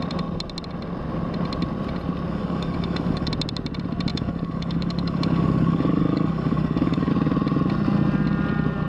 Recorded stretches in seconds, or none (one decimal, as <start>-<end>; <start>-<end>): 0.0-2.3; 3.3-4.1; 7.1-8.9